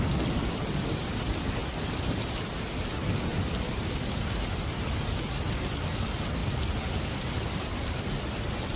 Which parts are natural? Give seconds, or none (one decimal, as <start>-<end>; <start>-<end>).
0.0-8.8